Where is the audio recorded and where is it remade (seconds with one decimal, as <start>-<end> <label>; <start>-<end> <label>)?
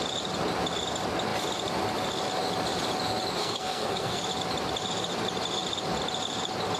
0.0-3.4 recorded; 3.4-4.2 remade; 4.2-6.8 recorded